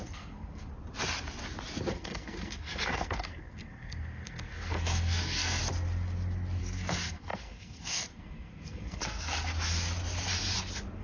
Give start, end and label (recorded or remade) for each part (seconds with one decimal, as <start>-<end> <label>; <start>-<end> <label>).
0.0-0.7 remade; 0.7-1.9 recorded; 1.9-5.6 remade; 5.6-6.6 recorded; 6.6-9.5 remade; 9.5-11.0 recorded